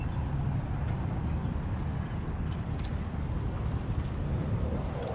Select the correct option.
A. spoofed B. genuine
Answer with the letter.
B